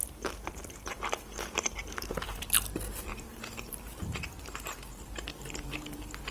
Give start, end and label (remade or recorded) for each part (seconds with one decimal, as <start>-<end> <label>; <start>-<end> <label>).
0.0-2.4 remade; 2.4-3.1 recorded; 3.1-6.3 remade

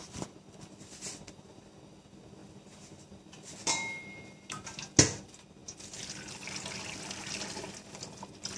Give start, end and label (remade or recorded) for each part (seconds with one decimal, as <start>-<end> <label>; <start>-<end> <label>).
0.0-8.6 recorded

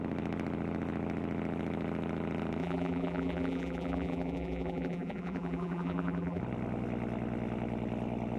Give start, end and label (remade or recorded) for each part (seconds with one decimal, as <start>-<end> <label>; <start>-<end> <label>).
0.0-2.6 recorded; 2.6-6.4 remade; 6.4-8.4 recorded

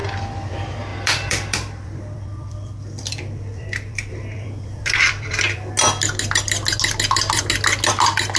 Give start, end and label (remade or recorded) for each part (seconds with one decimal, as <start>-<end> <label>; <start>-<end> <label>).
0.0-0.5 remade; 0.5-0.9 recorded; 0.9-5.7 remade; 5.7-8.4 recorded